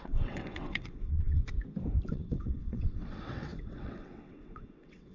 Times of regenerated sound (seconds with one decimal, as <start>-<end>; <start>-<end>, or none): 0.0-1.4; 2.1-5.1